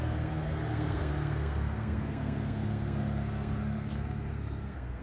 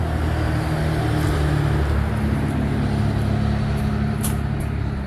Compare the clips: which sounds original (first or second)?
second